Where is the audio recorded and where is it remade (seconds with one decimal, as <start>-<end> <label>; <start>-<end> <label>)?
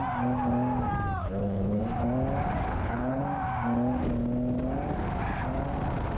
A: 0.0-1.2 recorded; 1.2-1.8 remade; 1.8-2.7 recorded; 2.7-3.2 remade; 3.2-6.2 recorded